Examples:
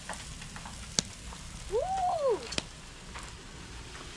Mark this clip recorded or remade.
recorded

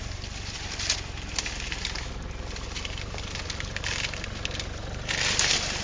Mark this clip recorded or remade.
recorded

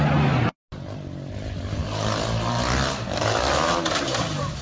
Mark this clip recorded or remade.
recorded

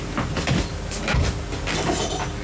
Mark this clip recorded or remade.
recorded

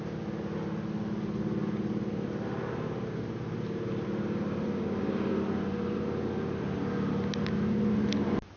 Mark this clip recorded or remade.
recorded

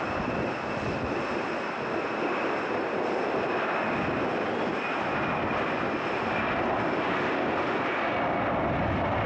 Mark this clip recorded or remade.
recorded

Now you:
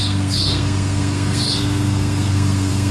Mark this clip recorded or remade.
remade